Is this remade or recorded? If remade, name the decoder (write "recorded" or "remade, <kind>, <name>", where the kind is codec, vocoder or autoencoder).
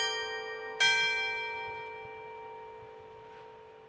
recorded